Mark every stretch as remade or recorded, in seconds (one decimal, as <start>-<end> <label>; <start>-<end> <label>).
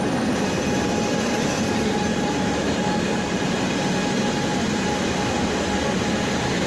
0.0-2.1 recorded; 2.1-3.6 remade; 3.6-4.5 recorded; 4.5-5.3 remade; 5.3-6.7 recorded